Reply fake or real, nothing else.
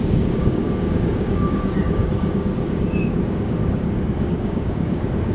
fake